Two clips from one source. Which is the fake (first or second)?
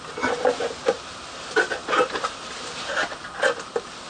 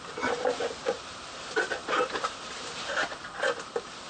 second